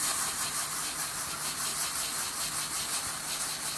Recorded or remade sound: recorded